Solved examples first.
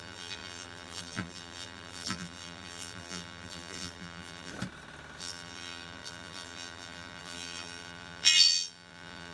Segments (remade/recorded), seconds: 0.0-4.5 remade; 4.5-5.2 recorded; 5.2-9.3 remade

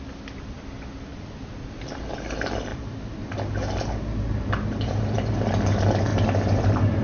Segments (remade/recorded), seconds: 0.0-1.1 recorded; 1.1-1.8 remade; 1.8-2.7 recorded; 2.7-3.3 remade; 3.3-6.1 recorded; 6.1-7.0 remade

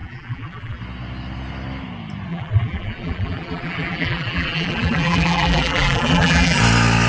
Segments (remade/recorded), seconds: 0.0-0.8 remade; 0.8-2.3 recorded; 2.3-6.6 remade; 6.6-7.1 recorded

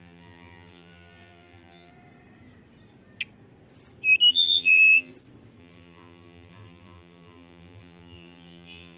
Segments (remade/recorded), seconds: 0.0-1.9 remade; 1.9-4.3 recorded; 4.3-5.1 remade; 5.1-5.6 recorded; 5.6-9.0 remade

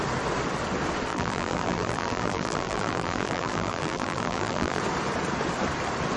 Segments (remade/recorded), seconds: 0.0-1.1 recorded; 1.1-4.8 remade; 4.8-6.2 recorded

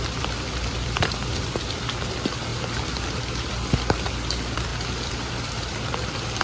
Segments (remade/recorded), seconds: 0.0-6.4 remade

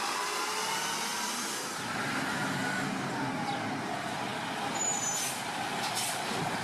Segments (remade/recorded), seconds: 0.0-1.1 recorded; 1.1-1.6 remade; 1.6-2.6 recorded; 2.6-3.2 remade; 3.2-6.6 recorded

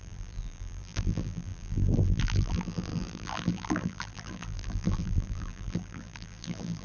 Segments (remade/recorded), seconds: 0.0-6.8 remade